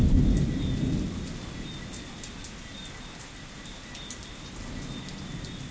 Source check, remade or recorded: recorded